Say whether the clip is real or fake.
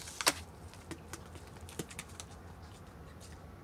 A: real